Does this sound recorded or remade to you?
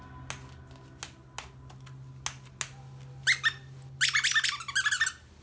recorded